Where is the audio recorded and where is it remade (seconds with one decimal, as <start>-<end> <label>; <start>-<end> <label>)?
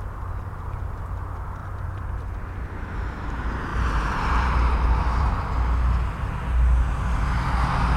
0.0-1.6 recorded; 1.6-2.2 remade; 2.2-3.7 recorded; 3.7-5.3 remade; 5.3-8.0 recorded